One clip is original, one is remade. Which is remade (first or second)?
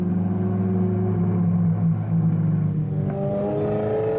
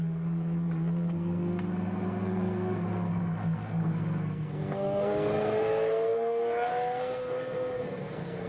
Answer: second